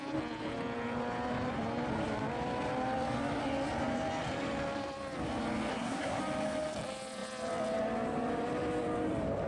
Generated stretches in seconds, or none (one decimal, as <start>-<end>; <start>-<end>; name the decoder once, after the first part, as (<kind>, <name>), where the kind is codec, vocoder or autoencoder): 5.7-6.2 (codec, SNAC)